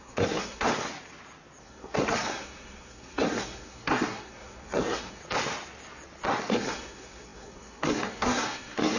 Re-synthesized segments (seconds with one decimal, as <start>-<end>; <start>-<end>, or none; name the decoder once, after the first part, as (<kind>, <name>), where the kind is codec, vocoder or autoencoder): 0.0-0.7 (codec, SNAC); 1.6-5.2; 6.4-9.0